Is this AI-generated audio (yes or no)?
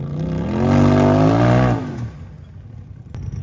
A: no